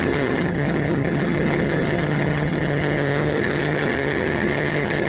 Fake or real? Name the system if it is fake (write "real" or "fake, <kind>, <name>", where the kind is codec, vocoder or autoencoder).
fake, vocoder, HiFi-GAN